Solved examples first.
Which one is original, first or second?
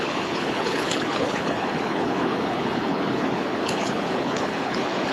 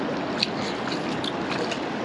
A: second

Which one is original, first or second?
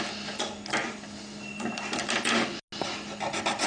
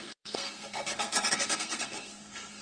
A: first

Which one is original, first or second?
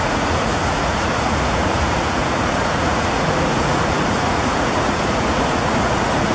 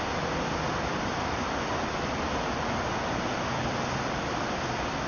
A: second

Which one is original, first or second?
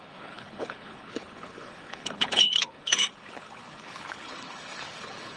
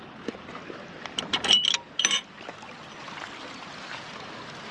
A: second